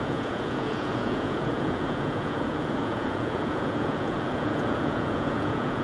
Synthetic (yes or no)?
yes